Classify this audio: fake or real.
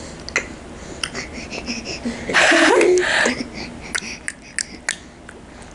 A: real